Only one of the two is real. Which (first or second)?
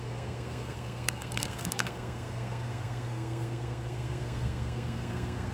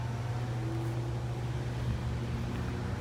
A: second